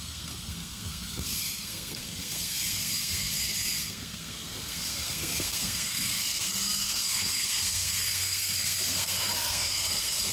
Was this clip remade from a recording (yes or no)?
yes